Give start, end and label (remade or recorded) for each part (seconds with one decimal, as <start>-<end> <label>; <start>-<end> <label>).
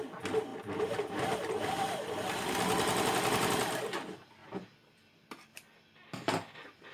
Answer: 0.0-4.4 recorded; 4.4-5.3 remade; 5.3-6.9 recorded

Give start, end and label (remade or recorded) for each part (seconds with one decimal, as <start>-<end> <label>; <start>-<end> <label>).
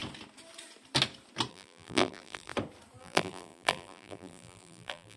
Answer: 0.0-1.5 recorded; 1.5-2.5 remade; 2.5-3.0 recorded; 3.0-5.2 remade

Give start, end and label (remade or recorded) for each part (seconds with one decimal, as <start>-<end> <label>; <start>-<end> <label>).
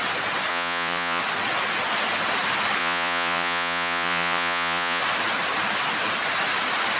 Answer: 0.0-0.5 recorded; 0.5-1.2 remade; 1.2-2.8 recorded; 2.8-5.0 remade; 5.0-7.0 recorded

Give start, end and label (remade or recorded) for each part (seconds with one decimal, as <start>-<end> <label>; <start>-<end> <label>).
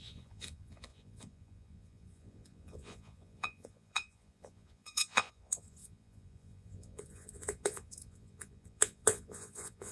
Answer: 0.0-9.9 remade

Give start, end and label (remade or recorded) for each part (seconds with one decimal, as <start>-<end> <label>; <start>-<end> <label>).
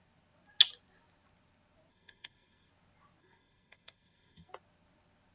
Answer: 0.0-1.9 recorded; 1.9-2.7 remade; 2.7-3.2 recorded; 3.2-4.5 remade; 4.5-5.3 recorded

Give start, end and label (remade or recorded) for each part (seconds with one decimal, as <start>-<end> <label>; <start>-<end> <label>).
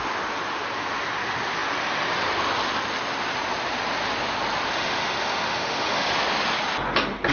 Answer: 0.0-4.7 recorded; 4.7-6.1 remade; 6.1-7.3 recorded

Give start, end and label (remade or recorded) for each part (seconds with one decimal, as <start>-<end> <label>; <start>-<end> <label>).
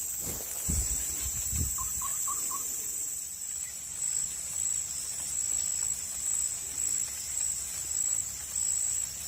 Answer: 0.0-9.3 recorded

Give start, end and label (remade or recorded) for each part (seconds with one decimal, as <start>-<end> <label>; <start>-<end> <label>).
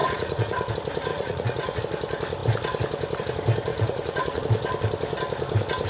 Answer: 0.0-0.7 remade; 0.7-1.1 recorded; 1.1-1.8 remade; 1.8-3.7 recorded; 3.7-4.4 remade; 4.4-5.9 recorded